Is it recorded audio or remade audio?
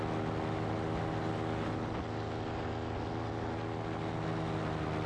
recorded